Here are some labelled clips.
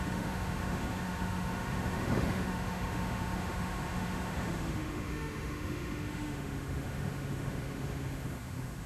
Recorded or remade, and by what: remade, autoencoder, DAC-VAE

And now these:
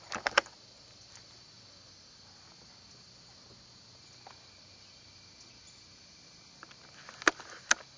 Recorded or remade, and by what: recorded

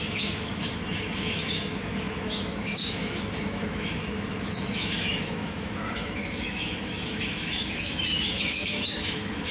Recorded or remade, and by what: remade, autoencoder, DAC-VAE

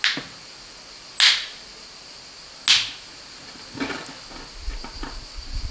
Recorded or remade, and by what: recorded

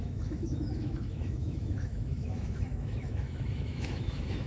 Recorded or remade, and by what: remade, autoencoder, DAC-VAE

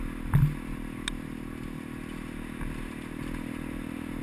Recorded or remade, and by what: recorded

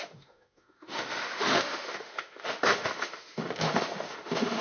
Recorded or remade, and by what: remade, autoencoder, DAC-VAE